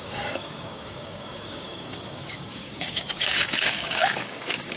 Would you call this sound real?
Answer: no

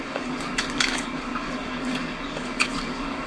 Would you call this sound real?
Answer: no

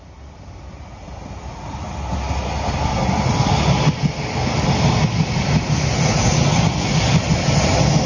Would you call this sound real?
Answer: yes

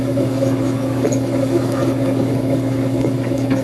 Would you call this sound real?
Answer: no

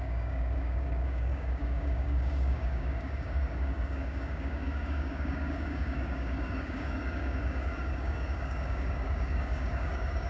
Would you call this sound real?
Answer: no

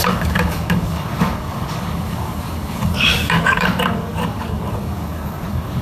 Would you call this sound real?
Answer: no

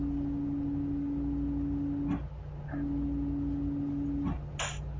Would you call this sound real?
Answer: yes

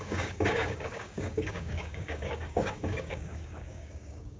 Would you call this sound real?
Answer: no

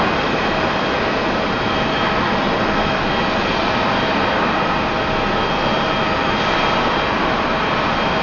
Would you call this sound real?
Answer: yes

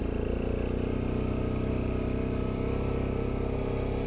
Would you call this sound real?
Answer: yes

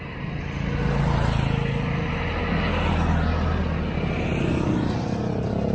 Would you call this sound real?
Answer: yes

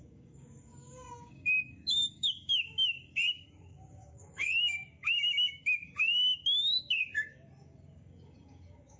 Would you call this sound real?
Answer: no